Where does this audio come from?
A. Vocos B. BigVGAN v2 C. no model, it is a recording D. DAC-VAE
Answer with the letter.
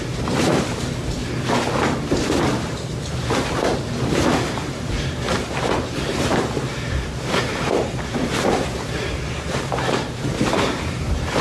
B